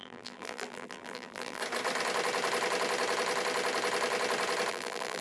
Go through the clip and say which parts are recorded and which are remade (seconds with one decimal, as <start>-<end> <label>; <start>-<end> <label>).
0.0-1.6 remade; 1.6-4.7 recorded; 4.7-5.2 remade